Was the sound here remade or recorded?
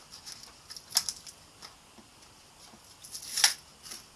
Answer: recorded